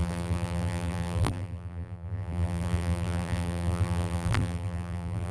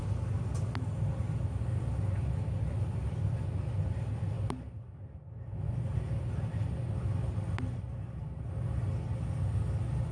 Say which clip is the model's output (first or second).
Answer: first